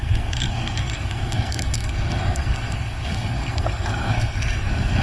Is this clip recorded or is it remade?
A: remade